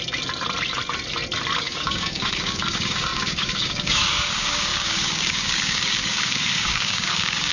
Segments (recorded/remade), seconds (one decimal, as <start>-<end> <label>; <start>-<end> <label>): 0.0-1.6 recorded; 1.6-7.5 remade